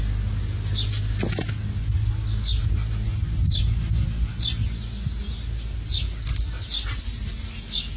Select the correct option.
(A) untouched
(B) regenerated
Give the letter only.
A